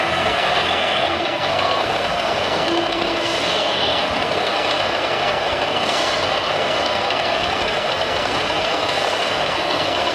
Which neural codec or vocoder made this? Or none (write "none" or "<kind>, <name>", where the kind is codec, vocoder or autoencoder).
codec, SNAC